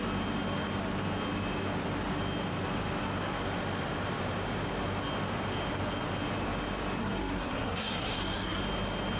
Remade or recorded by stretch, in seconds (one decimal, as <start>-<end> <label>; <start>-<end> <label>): 0.0-7.0 recorded; 7.0-8.6 remade; 8.6-9.2 recorded